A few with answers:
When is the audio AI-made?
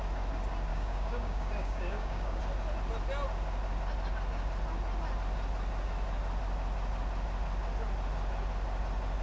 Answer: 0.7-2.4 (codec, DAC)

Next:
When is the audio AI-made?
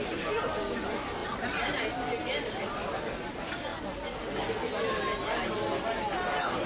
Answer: none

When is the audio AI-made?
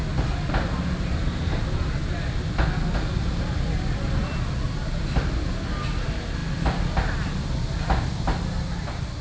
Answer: none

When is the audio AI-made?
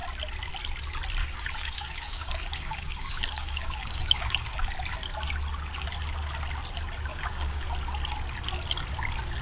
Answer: 1.2-4.7 (codec, DAC); 7.1-7.6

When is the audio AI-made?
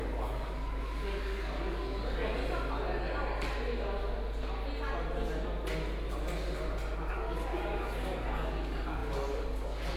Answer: 0.0-2.4 (codec, DAC); 7.1-10.0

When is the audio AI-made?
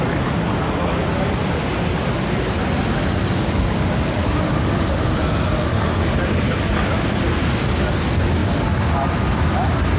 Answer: 5.7-6.6 (codec, DAC)